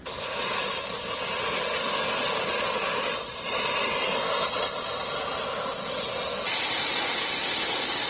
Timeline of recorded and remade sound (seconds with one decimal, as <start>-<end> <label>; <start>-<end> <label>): 0.0-1.8 recorded; 1.8-3.1 remade; 3.1-8.1 recorded